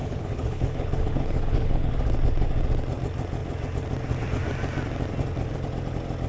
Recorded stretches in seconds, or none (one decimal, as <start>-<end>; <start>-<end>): 1.9-6.3